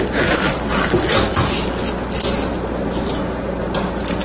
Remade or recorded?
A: recorded